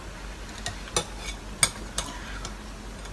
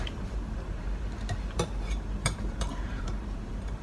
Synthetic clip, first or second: second